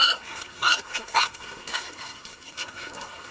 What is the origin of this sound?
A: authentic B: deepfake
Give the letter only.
B